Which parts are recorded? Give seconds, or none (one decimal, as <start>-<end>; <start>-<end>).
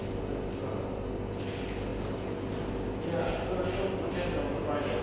0.0-5.0